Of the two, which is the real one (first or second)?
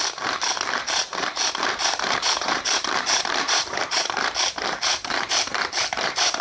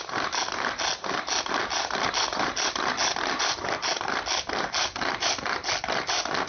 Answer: second